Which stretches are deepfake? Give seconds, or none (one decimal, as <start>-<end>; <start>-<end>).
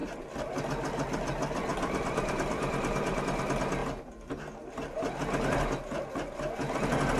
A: 1.7-3.2